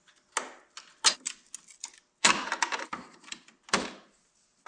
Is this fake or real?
real